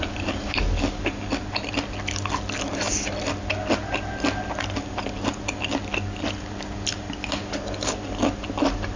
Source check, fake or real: real